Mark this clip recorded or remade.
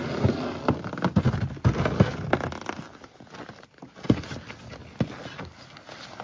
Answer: recorded